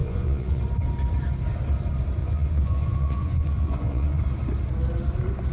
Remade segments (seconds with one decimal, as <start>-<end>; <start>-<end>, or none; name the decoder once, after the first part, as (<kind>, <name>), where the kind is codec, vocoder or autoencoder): 0.0-0.6 (vocoder, Vocos); 2.2-4.2